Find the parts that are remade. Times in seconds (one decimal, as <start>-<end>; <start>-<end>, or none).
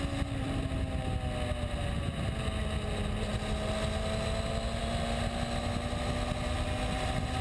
none